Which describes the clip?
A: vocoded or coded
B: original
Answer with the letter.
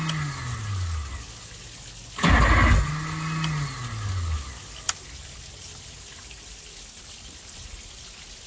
B